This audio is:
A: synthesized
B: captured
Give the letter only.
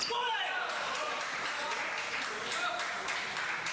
B